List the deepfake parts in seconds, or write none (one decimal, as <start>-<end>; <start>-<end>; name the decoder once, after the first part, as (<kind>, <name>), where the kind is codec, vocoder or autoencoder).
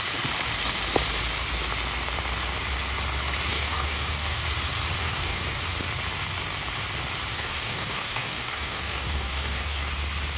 3.5-4.4 (codec, DAC); 5.0-5.6; 7.3-9.9